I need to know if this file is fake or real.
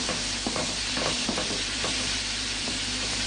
fake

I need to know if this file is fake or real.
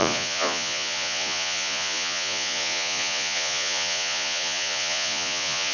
fake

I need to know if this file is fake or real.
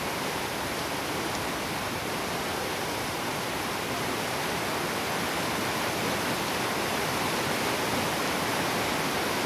real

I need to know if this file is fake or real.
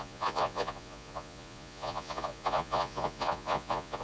fake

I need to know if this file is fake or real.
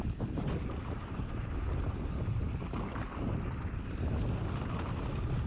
real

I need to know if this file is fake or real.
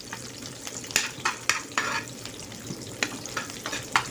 real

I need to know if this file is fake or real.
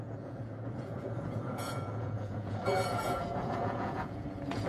fake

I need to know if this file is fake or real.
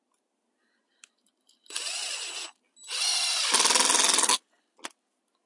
real